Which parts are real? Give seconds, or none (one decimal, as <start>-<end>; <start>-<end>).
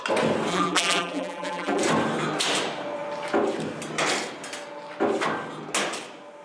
0.0-0.5; 1.8-6.4